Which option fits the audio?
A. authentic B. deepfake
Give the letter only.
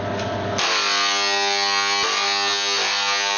A